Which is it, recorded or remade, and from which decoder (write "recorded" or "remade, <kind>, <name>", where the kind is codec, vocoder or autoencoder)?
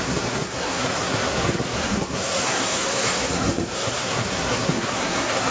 remade, codec, SNAC